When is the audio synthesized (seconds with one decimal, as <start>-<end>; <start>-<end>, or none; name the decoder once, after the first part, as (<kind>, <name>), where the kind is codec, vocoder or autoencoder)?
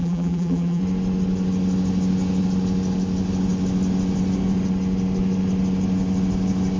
0.0-0.8 (vocoder, BigVGAN v2)